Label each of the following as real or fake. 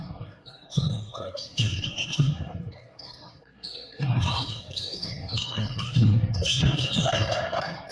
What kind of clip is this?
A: fake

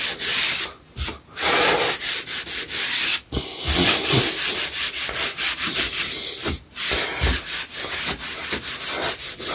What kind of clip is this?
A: real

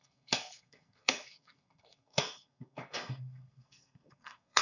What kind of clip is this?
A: fake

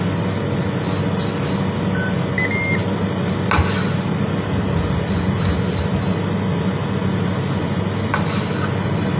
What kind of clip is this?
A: real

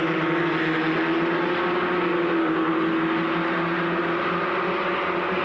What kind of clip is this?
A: real